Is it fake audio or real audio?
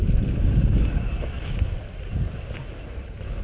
real